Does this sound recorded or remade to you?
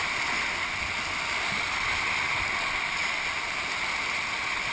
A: recorded